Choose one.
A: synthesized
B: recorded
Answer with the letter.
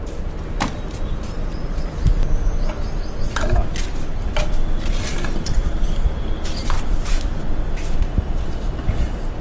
B